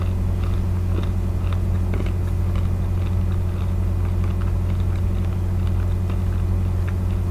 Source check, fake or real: real